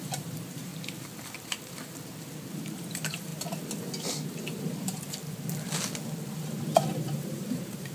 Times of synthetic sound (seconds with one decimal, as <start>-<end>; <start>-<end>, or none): 0.0-0.7; 2.7-3.3; 4.6-5.2; 6.3-7.9